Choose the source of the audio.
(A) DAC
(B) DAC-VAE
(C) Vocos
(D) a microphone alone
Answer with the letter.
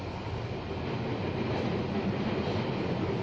D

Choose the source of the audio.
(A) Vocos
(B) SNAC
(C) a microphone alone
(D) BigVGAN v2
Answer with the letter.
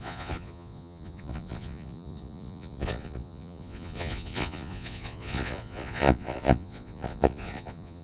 A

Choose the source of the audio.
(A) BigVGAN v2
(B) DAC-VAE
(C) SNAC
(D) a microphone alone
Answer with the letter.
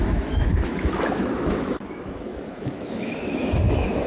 B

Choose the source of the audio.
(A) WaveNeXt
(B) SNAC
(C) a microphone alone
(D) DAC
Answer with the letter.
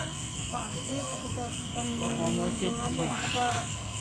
B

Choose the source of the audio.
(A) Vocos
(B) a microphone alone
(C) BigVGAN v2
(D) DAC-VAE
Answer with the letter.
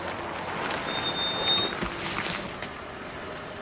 B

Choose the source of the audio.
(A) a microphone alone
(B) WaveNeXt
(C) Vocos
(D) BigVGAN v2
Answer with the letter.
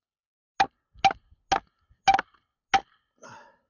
A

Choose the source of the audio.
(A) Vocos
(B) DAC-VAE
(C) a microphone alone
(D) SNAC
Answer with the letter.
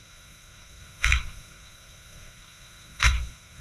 D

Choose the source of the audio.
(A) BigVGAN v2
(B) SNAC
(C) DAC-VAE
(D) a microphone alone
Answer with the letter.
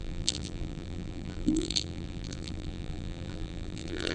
A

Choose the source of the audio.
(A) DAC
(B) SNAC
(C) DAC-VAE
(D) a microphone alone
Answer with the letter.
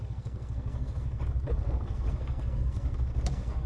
B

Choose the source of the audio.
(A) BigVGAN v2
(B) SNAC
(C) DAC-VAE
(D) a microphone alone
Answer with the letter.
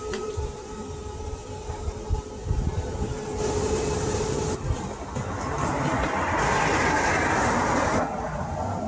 A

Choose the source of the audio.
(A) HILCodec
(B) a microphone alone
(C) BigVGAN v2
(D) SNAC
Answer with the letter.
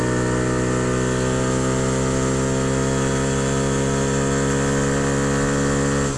B